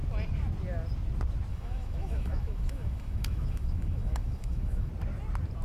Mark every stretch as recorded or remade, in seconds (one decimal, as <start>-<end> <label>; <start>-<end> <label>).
0.0-1.5 recorded; 1.5-4.9 remade; 4.9-5.6 recorded